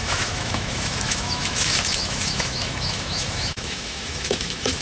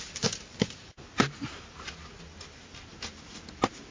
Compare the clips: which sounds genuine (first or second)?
second